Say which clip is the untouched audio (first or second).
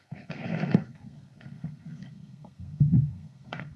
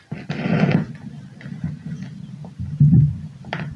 second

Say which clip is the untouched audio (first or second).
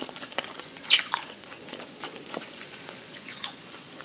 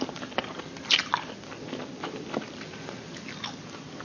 second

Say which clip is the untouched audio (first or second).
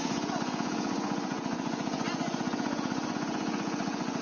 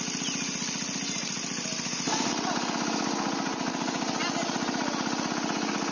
second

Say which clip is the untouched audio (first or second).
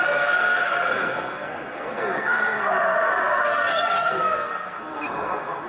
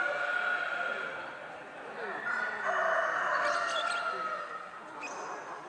second